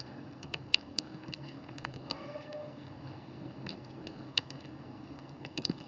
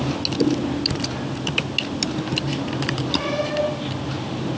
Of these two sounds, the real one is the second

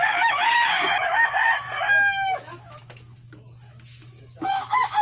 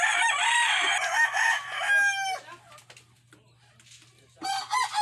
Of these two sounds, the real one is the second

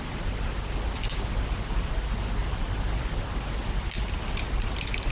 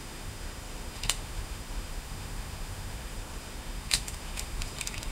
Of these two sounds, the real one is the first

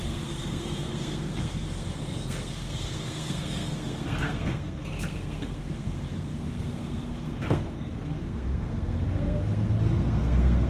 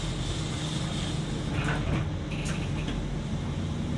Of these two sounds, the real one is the second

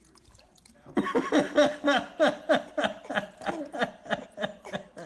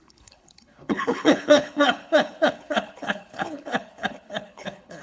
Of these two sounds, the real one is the first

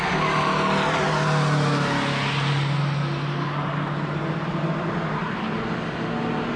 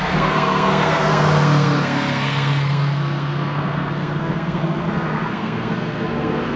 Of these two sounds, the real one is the first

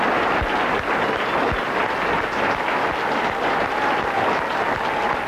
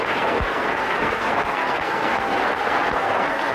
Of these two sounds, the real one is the first